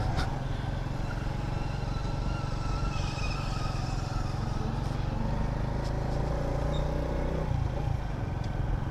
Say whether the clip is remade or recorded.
recorded